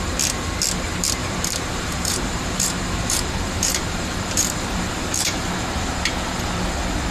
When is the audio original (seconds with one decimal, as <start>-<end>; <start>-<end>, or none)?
0.0-1.2; 5.5-7.1